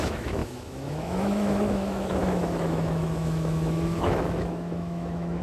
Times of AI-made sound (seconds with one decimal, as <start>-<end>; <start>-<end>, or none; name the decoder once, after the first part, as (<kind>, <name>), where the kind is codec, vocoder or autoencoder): 0.0-5.4 (autoencoder, DAC-VAE)